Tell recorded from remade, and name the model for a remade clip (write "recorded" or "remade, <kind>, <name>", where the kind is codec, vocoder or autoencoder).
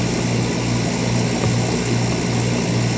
recorded